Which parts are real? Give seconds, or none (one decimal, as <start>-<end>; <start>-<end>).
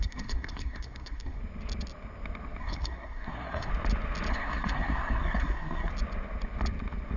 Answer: 1.4-2.6; 3.7-4.3; 5.9-7.2